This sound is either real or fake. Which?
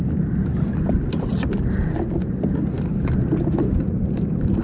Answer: real